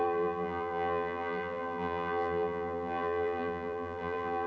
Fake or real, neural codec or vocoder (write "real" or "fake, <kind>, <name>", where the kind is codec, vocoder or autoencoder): fake, vocoder, BigVGAN v2